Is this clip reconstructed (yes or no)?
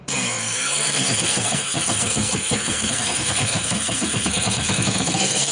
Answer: yes